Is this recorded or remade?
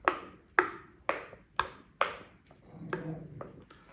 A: recorded